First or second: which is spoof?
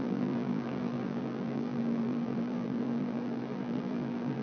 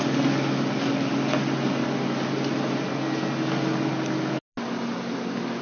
first